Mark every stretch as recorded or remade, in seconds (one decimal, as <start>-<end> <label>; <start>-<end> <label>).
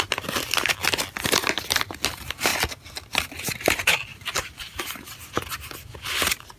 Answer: 0.0-4.1 recorded; 4.1-5.3 remade; 5.3-6.6 recorded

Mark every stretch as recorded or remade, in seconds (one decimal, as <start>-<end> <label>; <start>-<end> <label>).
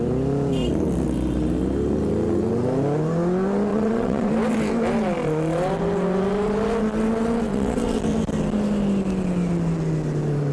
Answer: 0.0-3.7 recorded; 3.7-4.3 remade; 4.3-7.5 recorded; 7.5-8.0 remade; 8.0-10.5 recorded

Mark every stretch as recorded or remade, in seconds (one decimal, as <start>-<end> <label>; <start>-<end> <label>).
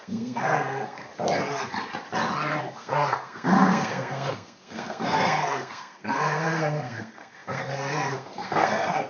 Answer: 0.0-1.1 remade; 1.1-2.6 recorded; 2.6-9.1 remade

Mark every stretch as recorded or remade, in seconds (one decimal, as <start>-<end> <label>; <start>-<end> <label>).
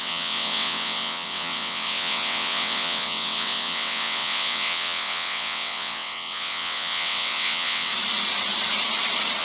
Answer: 0.0-7.9 remade; 7.9-9.4 recorded